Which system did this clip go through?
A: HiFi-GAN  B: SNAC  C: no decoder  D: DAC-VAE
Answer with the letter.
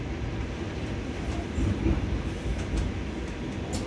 C